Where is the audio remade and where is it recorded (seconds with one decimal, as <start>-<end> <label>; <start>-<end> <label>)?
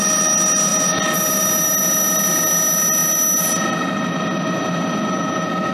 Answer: 0.0-5.7 recorded